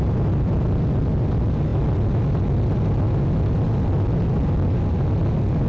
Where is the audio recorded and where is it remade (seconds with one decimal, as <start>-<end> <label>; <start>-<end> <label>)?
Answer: 0.0-5.7 recorded